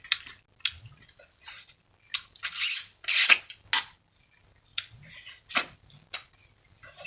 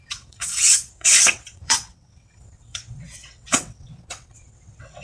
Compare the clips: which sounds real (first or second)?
first